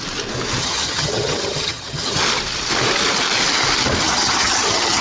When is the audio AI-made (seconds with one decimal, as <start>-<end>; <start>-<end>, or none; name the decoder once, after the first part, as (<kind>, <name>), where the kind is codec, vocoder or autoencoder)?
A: 0.6-2.2 (vocoder, HiFi-GAN); 4.0-5.0